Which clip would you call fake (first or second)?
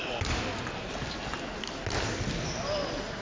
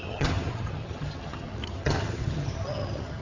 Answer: second